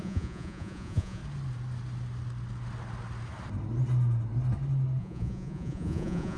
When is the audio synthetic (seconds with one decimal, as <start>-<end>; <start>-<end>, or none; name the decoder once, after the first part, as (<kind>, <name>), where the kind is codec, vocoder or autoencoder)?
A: 0.0-1.2 (vocoder, Vocos); 5.0-6.4